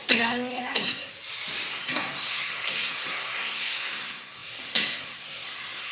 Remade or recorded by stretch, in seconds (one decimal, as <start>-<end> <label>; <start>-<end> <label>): 0.0-1.1 remade; 1.1-1.7 recorded; 1.7-5.9 remade